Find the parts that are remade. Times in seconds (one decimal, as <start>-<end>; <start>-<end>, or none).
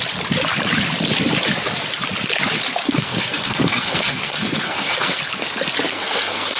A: 2.8-5.2; 5.9-6.6